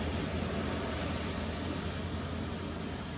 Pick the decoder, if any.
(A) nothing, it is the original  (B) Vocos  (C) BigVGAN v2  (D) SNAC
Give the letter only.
A